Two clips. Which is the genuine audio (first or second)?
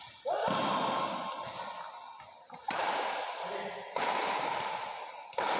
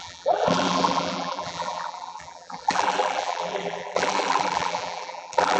first